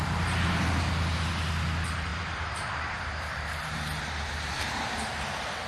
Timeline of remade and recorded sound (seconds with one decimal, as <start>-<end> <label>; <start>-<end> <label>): 0.0-2.1 recorded; 2.1-4.9 remade; 4.9-5.7 recorded